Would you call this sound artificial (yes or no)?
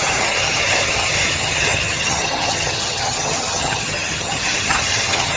yes